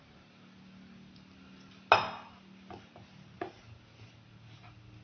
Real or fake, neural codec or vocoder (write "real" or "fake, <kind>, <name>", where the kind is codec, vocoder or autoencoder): real